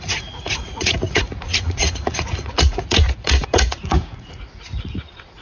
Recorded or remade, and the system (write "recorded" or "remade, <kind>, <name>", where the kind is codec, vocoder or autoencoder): remade, vocoder, Vocos